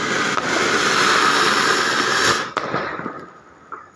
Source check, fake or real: real